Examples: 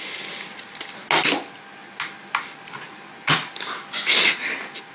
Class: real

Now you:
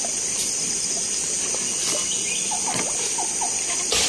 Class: real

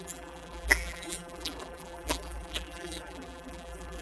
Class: fake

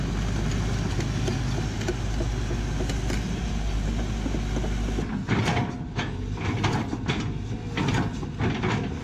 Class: real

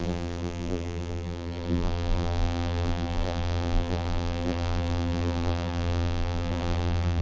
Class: fake